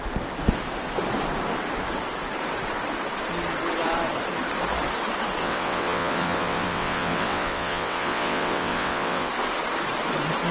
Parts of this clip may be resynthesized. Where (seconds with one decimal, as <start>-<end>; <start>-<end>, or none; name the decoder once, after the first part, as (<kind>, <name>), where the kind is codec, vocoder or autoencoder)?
5.4-9.3 (vocoder, WaveNeXt)